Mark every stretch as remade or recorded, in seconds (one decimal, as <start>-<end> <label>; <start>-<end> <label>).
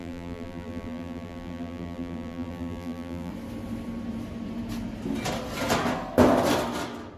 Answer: 0.0-3.3 remade; 3.3-7.2 recorded